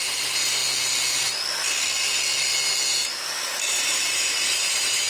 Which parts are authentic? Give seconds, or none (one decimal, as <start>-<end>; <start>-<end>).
0.6-3.7